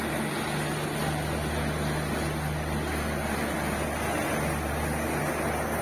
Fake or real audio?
real